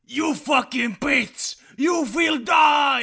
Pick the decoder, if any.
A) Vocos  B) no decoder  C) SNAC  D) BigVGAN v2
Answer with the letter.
D